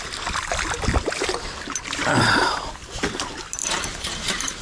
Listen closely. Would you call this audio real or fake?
real